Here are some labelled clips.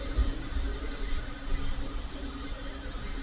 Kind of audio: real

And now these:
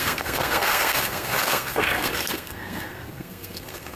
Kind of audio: fake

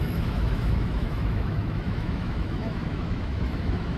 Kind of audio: fake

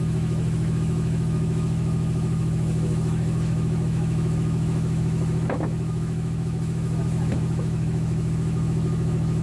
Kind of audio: fake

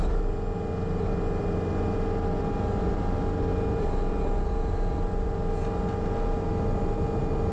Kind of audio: real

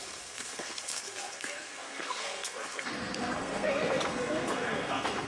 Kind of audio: fake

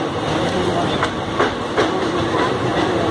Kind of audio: real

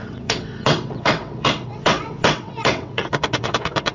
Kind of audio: fake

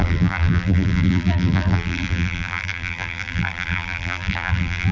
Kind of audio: fake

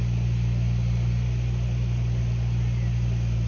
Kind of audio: real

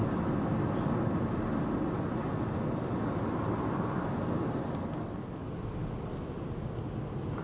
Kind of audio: real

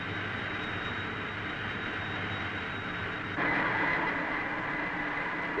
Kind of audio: real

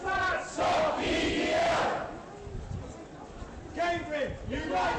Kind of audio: real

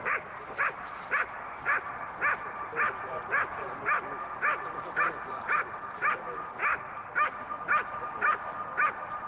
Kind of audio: real